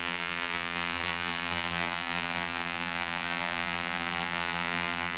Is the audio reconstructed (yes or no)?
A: yes